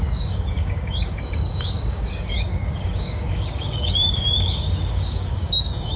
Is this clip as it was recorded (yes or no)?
no